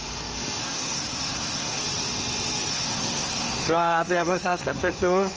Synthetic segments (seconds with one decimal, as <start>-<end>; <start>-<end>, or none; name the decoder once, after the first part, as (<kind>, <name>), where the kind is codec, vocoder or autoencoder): 0.6-1.8 (codec, SNAC); 2.7-5.4